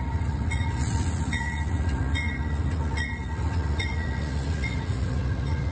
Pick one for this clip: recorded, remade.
remade